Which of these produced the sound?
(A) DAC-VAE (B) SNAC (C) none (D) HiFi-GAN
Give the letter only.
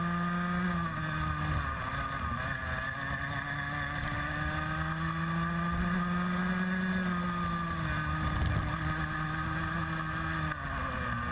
C